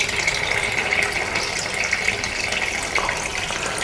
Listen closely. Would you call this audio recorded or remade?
recorded